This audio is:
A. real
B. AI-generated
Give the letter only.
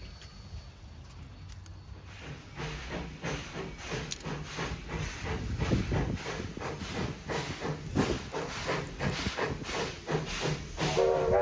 A